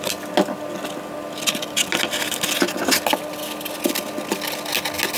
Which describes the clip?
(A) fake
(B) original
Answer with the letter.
B